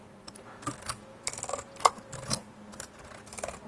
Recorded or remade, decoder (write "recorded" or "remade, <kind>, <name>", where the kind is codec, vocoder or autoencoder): recorded